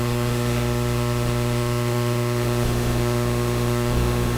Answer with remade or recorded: remade